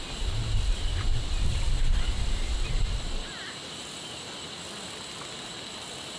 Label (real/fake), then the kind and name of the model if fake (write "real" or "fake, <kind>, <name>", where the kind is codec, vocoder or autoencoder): real